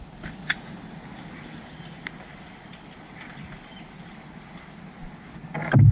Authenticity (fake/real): real